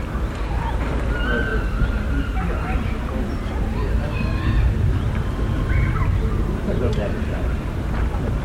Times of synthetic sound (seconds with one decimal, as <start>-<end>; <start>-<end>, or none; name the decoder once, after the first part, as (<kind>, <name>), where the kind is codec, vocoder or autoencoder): 1.5-3.6 (vocoder, BigVGAN v2)